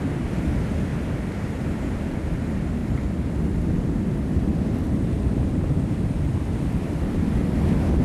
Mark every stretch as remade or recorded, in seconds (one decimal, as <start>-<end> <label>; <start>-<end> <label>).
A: 0.0-8.0 remade